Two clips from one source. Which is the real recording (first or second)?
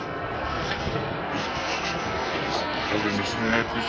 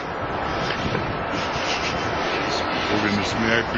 second